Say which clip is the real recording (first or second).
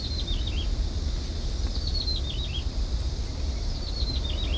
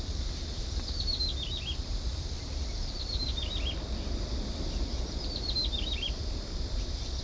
first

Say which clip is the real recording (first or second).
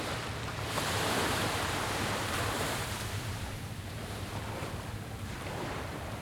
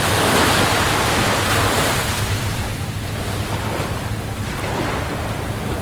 second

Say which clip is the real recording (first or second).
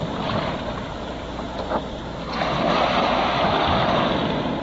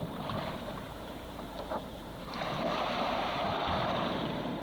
first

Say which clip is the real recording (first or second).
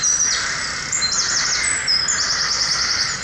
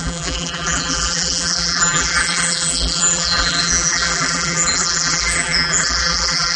first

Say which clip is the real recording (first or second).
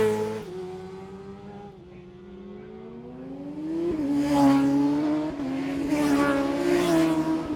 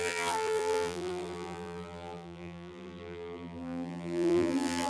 first